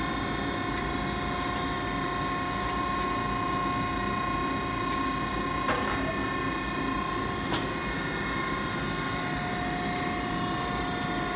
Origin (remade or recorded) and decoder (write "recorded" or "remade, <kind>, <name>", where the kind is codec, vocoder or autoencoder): recorded